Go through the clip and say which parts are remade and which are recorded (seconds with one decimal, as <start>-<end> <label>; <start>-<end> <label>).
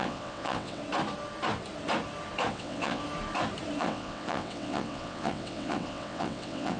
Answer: 0.0-0.8 remade; 0.8-2.5 recorded; 2.5-3.0 remade; 3.0-3.8 recorded; 3.8-6.8 remade